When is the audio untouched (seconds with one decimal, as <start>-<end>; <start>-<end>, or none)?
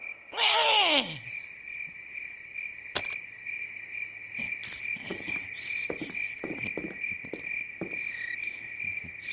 0.0-9.3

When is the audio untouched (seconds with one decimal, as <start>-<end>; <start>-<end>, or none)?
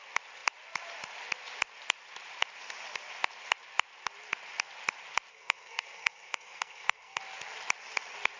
0.0-5.3; 7.2-8.4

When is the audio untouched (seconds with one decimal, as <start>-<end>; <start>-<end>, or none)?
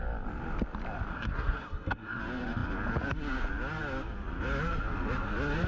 0.0-1.1; 2.2-5.7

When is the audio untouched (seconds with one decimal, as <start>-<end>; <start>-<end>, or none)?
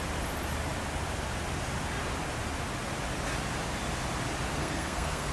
0.0-4.6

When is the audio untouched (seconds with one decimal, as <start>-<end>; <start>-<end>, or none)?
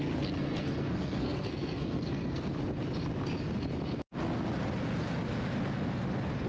2.5-6.5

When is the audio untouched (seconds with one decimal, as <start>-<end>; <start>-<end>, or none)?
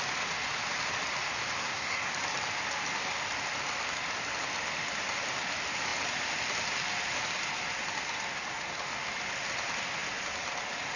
0.0-1.6; 2.1-11.0